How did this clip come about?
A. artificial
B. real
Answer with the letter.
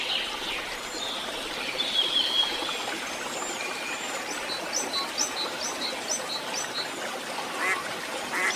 B